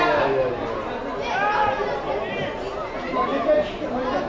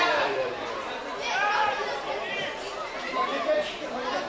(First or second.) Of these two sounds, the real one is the first